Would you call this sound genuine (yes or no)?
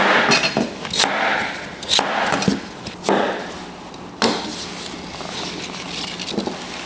yes